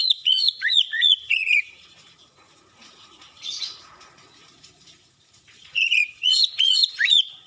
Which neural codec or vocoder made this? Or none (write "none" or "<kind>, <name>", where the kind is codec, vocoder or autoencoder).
vocoder, Vocos